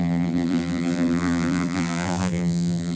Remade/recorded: remade